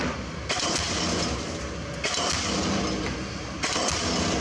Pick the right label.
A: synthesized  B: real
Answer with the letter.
B